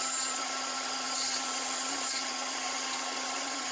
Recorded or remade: remade